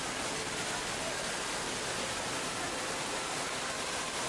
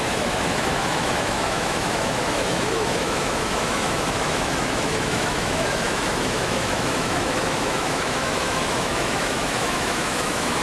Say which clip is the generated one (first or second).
second